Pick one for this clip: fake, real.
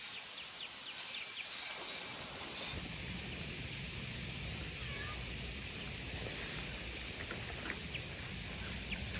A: real